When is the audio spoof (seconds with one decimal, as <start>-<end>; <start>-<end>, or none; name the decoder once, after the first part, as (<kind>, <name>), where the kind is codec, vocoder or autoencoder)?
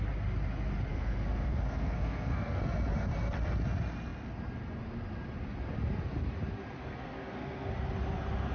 0.9-2.6 (codec, SNAC); 6.8-7.7